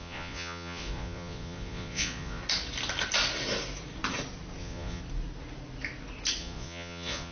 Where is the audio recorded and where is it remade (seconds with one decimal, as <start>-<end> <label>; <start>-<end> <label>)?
0.0-2.4 remade; 2.4-4.6 recorded; 4.6-5.0 remade; 5.0-6.4 recorded; 6.4-7.3 remade